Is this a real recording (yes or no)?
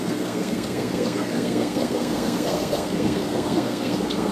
no